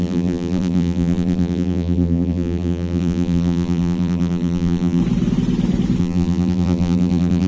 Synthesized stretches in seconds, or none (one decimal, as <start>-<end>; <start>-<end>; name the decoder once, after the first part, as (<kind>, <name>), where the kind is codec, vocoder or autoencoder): 0.0-5.0 (vocoder, BigVGAN v2); 6.0-7.5